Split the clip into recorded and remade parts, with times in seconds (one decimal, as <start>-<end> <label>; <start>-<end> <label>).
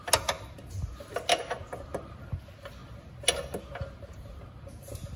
0.0-5.2 recorded